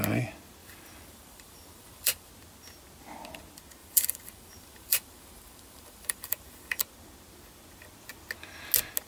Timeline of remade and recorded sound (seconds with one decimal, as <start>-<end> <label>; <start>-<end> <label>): 0.0-0.6 recorded; 0.6-2.3 remade; 2.3-3.8 recorded; 3.8-6.8 remade; 6.8-9.1 recorded